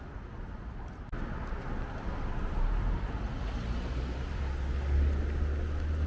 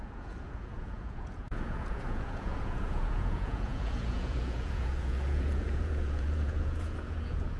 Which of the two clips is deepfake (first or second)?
second